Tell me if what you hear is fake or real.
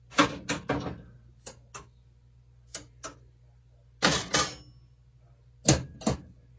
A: real